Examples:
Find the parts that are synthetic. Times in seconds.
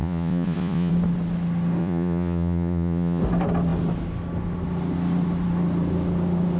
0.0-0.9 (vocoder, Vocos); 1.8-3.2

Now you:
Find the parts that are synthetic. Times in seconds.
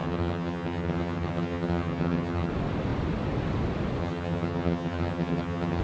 0.0-2.5 (vocoder, HiFi-GAN); 4.0-5.8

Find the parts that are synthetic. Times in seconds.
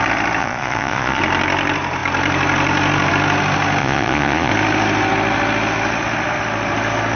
0.4-1.2 (vocoder, Vocos); 3.8-4.5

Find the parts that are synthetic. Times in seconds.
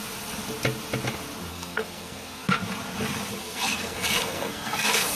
1.5-2.6 (codec, SNAC); 3.4-5.2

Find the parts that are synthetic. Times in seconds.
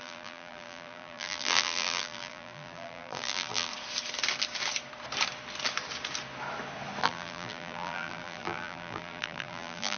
0.0-3.7 (vocoder, BigVGAN v2); 7.0-10.0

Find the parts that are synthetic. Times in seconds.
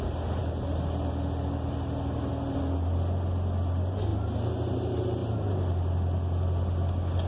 none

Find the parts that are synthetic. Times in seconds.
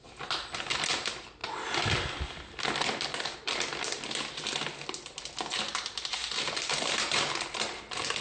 6.2-7.3 (vocoder, BigVGAN v2)